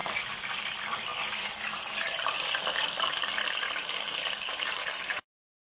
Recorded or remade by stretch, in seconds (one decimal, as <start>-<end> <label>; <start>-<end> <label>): 0.0-5.1 recorded; 5.1-5.8 remade